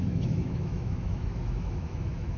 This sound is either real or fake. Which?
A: fake